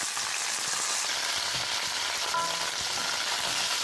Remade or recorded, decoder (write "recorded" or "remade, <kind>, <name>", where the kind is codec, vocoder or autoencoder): recorded